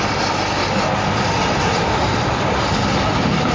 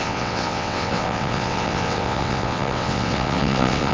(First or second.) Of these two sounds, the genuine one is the first